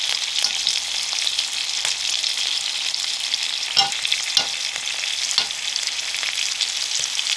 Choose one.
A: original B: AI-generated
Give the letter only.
A